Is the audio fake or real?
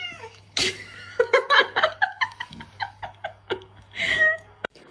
fake